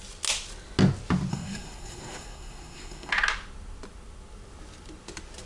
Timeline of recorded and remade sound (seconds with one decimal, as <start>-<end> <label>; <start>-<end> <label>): 0.0-1.3 recorded; 1.3-3.1 remade; 3.1-5.5 recorded